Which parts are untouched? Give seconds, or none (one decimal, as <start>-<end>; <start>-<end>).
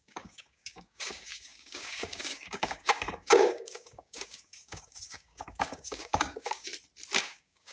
6.7-7.2